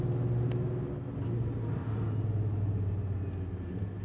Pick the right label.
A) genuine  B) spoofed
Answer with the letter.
A